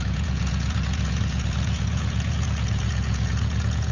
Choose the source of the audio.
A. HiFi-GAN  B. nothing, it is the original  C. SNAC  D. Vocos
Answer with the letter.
D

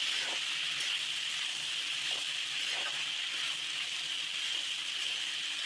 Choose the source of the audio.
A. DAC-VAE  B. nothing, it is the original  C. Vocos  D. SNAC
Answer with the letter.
B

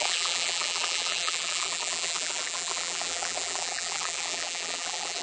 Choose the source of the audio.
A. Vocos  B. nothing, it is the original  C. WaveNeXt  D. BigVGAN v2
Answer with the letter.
D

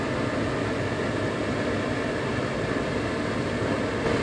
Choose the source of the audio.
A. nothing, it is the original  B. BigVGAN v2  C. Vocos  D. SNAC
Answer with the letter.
A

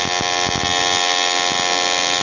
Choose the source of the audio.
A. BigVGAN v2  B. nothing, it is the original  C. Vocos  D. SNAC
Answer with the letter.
B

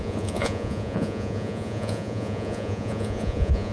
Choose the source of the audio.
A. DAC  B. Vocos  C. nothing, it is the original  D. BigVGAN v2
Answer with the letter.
B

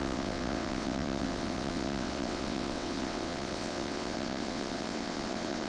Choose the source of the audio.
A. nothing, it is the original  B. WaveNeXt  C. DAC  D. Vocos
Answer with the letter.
B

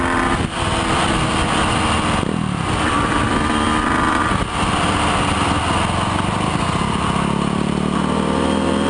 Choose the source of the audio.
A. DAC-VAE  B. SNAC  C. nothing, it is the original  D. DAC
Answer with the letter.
C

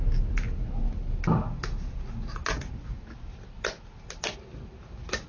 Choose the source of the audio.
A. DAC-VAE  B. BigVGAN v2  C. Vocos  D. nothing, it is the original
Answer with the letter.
D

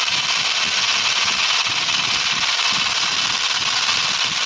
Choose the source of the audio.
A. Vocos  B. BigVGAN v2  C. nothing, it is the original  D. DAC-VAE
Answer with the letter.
C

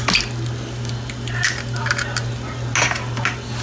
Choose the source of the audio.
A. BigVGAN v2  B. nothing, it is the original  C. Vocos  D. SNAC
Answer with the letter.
B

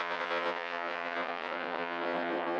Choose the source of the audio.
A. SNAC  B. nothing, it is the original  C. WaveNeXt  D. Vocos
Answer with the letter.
C